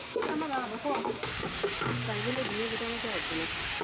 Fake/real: fake